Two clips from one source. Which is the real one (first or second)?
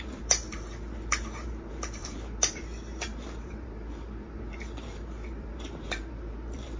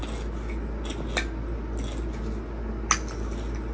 second